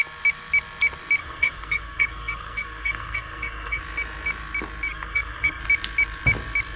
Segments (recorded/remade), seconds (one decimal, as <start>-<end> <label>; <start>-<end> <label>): 0.0-1.2 recorded; 1.2-3.8 remade; 3.8-4.9 recorded; 4.9-5.6 remade; 5.6-6.8 recorded